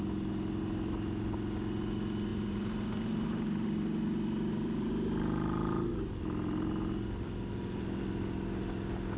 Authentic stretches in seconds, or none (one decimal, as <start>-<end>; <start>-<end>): 0.0-2.3; 4.9-9.2

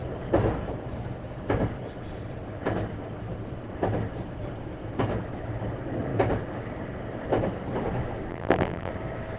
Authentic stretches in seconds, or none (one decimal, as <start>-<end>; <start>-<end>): 0.0-8.3; 8.9-9.4

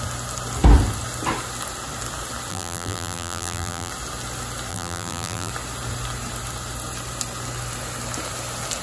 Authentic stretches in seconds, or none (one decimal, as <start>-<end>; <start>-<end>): 0.0-2.5; 3.9-4.7; 5.5-8.8

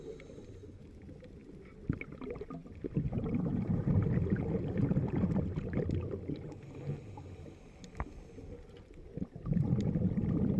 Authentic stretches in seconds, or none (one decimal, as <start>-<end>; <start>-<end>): 0.0-10.6

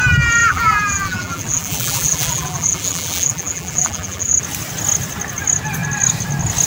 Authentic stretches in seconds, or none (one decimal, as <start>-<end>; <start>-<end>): 0.0-0.4; 4.4-6.7

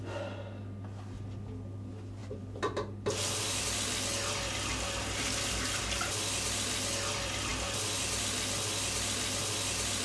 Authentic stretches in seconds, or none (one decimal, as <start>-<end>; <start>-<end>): 0.0-2.2; 3.6-10.0

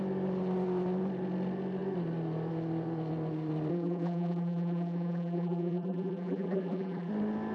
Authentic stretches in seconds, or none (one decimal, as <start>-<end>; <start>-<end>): 0.0-3.7; 7.1-7.5

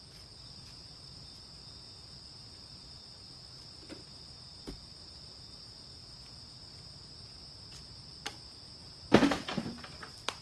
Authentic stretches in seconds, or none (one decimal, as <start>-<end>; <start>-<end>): 0.0-10.4